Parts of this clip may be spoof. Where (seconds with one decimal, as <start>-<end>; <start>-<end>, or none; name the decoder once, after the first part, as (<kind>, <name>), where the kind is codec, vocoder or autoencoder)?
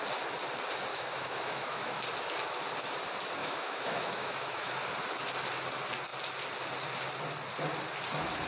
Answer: 0.9-2.0 (autoencoder, DAC-VAE); 3.4-4.7